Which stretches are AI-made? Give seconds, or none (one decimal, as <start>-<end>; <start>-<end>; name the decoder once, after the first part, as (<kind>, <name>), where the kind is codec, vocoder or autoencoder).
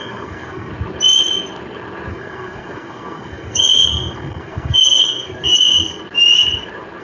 0.0-0.7 (codec, SNAC); 2.1-6.0